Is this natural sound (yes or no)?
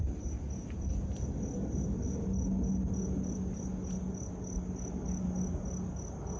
yes